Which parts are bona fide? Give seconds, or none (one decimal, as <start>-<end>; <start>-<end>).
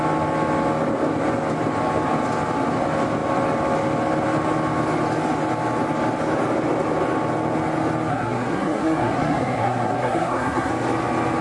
0.0-8.1; 10.7-11.4